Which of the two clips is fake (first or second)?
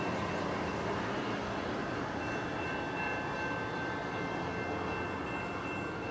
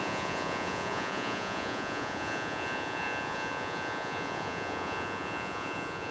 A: second